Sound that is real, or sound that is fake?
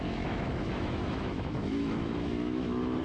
fake